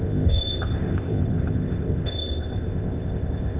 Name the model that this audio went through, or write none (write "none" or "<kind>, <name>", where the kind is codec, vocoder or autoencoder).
codec, ZipCodec